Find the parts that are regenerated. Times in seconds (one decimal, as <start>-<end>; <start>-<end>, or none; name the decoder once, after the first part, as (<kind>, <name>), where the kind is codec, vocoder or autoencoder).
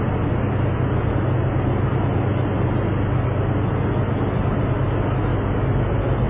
none